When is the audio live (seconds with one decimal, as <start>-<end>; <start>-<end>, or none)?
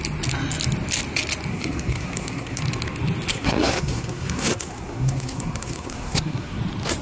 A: 0.0-1.5; 2.6-3.3; 6.6-7.0